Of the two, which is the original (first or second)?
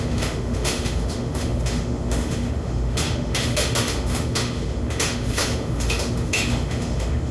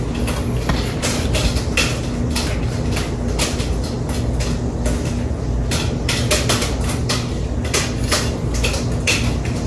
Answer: second